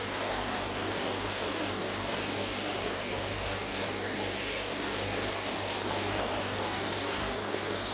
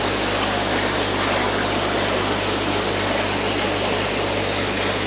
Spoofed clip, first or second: first